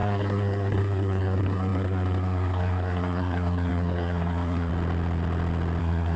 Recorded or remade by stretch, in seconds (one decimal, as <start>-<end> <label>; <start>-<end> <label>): 0.0-4.7 remade; 4.7-5.8 recorded; 5.8-6.2 remade